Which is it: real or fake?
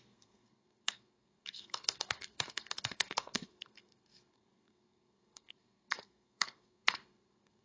fake